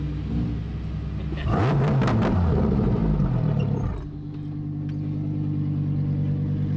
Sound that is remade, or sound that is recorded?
recorded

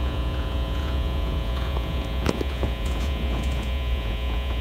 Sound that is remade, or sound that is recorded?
remade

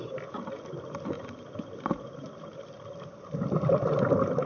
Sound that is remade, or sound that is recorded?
recorded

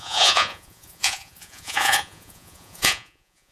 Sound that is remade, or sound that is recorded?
remade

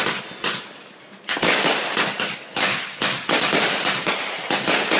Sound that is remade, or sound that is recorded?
recorded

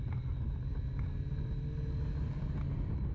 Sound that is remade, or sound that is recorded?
recorded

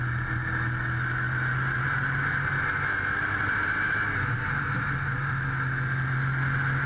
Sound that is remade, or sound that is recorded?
recorded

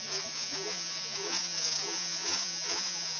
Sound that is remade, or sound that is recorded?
remade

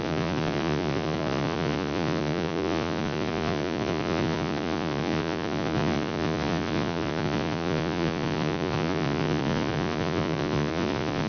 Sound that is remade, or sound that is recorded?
remade